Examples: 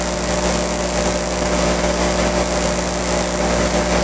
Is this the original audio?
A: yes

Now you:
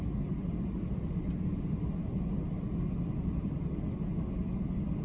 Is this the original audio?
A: yes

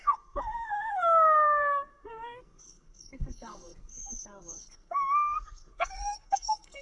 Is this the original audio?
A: no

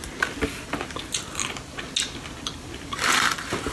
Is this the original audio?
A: yes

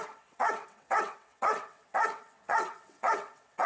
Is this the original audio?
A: no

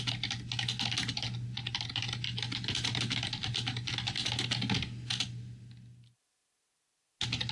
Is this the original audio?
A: yes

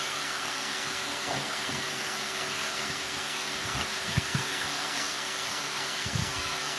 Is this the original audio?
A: no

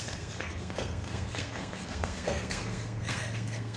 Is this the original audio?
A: no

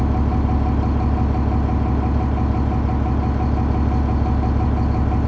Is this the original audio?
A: yes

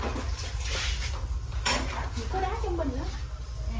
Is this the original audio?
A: yes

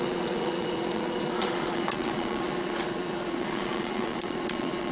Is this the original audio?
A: no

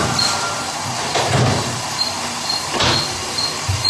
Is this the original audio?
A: yes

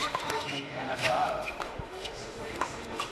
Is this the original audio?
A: no